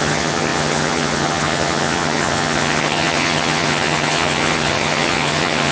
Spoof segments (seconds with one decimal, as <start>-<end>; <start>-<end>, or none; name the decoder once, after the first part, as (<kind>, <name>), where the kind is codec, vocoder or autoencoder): 0.0-5.7 (vocoder, HiFi-GAN)